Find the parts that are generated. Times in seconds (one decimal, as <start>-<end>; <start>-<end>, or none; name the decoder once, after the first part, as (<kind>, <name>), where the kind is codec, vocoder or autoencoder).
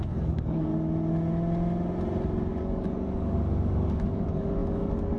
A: 0.0-0.7 (codec, DAC); 2.5-5.2